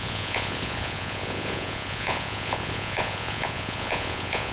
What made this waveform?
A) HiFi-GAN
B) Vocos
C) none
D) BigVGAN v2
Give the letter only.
B